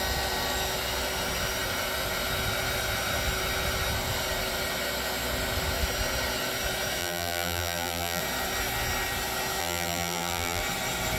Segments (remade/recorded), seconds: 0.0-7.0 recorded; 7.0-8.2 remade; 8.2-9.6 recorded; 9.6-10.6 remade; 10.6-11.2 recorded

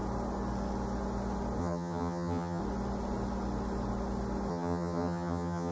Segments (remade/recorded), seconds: 0.0-1.6 recorded; 1.6-2.6 remade; 2.6-4.5 recorded; 4.5-5.7 remade

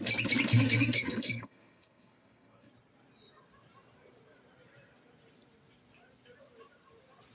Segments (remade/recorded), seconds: 0.0-0.5 recorded; 0.5-2.7 remade; 2.7-7.3 recorded

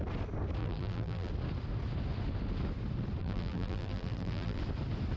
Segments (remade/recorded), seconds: 0.0-0.6 recorded; 0.6-1.3 remade; 1.3-3.2 recorded; 3.2-4.6 remade; 4.6-5.2 recorded

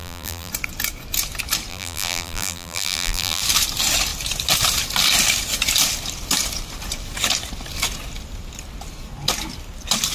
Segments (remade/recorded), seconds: 0.0-0.5 remade; 0.5-1.7 recorded; 1.7-3.4 remade; 3.4-10.1 recorded

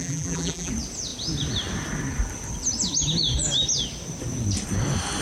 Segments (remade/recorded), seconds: 0.0-0.7 remade; 0.7-5.2 recorded

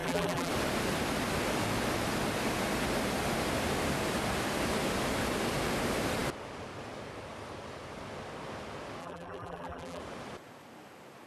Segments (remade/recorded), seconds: 0.0-0.5 remade; 0.5-9.0 recorded; 9.0-10.0 remade; 10.0-11.3 recorded